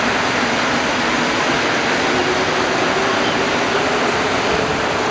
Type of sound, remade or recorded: recorded